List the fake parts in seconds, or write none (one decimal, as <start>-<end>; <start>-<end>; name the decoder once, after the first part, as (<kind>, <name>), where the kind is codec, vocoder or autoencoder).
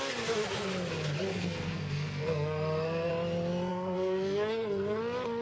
1.3-3.1 (codec, SNAC); 3.7-5.0